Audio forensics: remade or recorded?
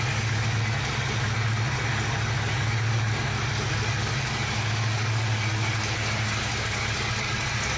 recorded